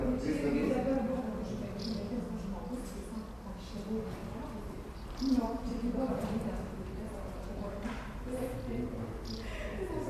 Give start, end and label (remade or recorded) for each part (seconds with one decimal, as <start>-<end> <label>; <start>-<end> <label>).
0.0-4.2 recorded; 4.2-7.3 remade; 7.3-10.1 recorded